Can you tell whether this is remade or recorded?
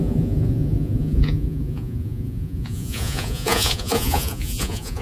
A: remade